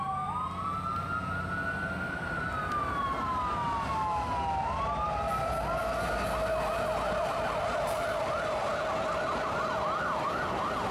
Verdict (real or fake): real